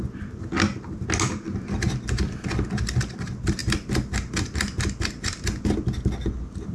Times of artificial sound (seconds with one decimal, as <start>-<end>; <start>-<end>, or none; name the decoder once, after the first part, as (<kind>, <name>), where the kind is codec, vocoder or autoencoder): none